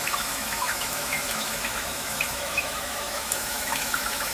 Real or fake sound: fake